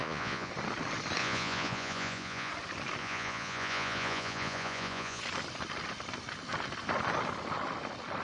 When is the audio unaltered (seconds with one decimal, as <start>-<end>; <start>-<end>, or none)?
0.5-1.2; 2.5-3.0; 5.2-8.2